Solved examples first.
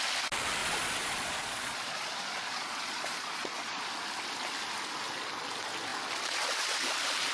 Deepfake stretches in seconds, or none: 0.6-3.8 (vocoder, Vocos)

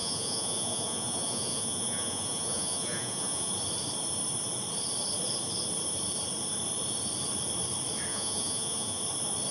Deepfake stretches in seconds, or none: 0.0-3.5 (vocoder, Vocos); 8.1-9.0

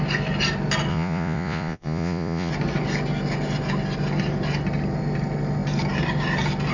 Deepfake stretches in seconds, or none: 0.9-2.5 (vocoder, Vocos)

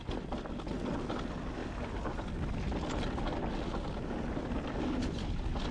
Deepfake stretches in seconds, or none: none

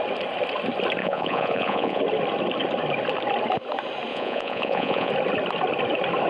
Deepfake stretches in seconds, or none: 1.0-2.0 (vocoder, Vocos); 4.1-5.1

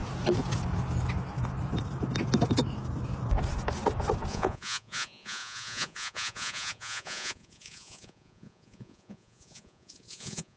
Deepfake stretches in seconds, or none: 4.3-10.6 (vocoder, Vocos)

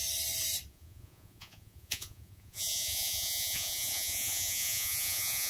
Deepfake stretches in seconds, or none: 0.7-5.5 (vocoder, Vocos)

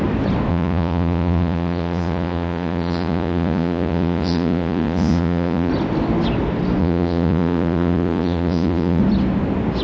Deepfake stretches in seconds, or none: 0.5-5.7 (vocoder, Vocos); 6.8-9.0